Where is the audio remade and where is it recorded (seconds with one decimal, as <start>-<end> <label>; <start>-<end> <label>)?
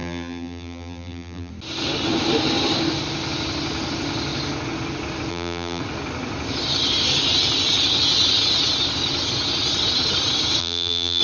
0.0-1.5 remade; 1.5-5.3 recorded; 5.3-5.8 remade; 5.8-10.6 recorded; 10.6-11.2 remade